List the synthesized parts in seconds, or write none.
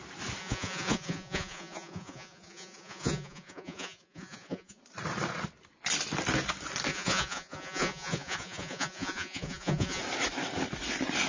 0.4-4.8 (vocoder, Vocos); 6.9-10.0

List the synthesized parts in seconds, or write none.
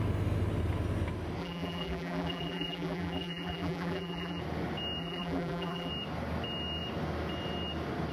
1.4-4.4 (vocoder, BigVGAN v2); 5.0-5.9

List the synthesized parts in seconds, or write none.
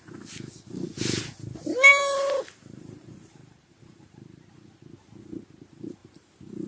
1.9-4.4 (vocoder, BigVGAN v2); 6.0-6.7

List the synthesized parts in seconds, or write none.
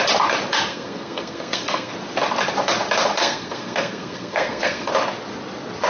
0.7-1.9 (codec, SNAC); 3.2-4.9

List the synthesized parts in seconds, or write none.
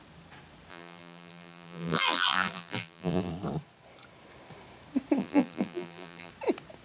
0.7-3.3 (vocoder, BigVGAN v2); 5.2-6.3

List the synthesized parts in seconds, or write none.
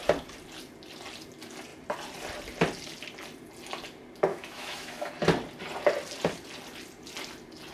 4.3-5.1 (autoencoder, DAC-VAE)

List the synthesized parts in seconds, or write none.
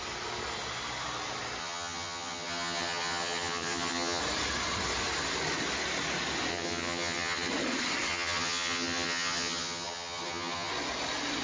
1.6-4.2 (vocoder, HiFi-GAN); 6.5-7.5; 8.1-10.7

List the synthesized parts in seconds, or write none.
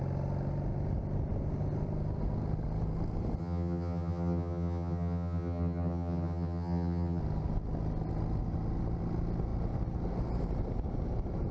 3.4-7.2 (vocoder, HiFi-GAN)